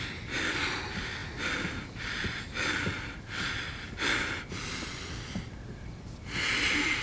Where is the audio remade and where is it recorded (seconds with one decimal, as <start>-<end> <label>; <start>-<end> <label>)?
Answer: 0.0-7.0 recorded